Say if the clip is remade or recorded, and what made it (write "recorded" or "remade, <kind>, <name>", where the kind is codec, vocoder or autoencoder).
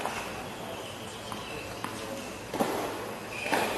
recorded